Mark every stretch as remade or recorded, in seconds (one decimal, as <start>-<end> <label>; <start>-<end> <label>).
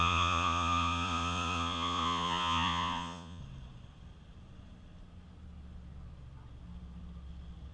0.0-3.4 remade; 3.4-7.7 recorded